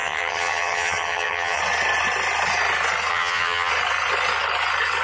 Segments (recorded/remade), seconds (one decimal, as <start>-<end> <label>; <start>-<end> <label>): 0.0-1.6 remade; 1.6-3.1 recorded; 3.1-3.7 remade; 3.7-5.0 recorded